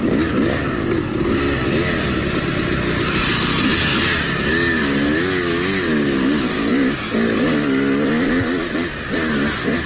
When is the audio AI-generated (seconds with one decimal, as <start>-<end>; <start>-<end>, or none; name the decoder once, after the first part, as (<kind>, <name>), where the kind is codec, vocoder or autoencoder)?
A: none